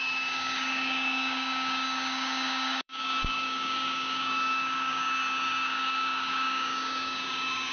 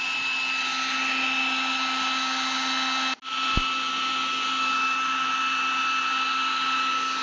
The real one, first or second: second